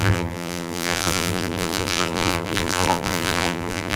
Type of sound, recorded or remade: remade